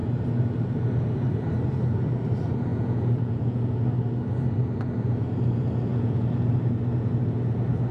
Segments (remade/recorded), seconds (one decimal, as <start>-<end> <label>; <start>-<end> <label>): 0.0-2.7 recorded; 2.7-3.8 remade; 3.8-5.9 recorded; 5.9-6.5 remade; 6.5-7.9 recorded